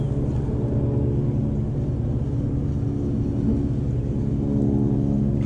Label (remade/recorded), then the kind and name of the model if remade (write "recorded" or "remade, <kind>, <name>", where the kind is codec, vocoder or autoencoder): recorded